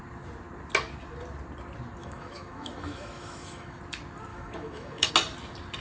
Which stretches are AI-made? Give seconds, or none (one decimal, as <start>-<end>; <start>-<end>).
2.0-3.8; 4.3-5.1